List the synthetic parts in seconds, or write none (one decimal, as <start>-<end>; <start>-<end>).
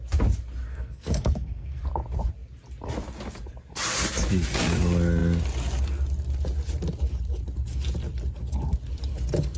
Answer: 0.6-1.8